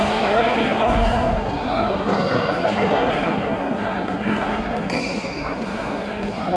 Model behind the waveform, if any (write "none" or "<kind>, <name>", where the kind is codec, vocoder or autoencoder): codec, SNAC